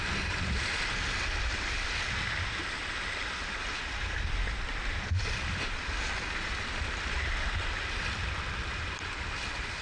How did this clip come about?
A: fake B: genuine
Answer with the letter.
B